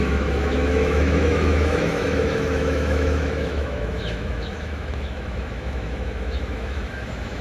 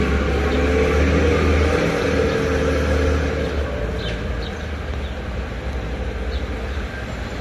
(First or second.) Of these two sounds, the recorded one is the second